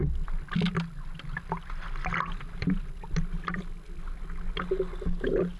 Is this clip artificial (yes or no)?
no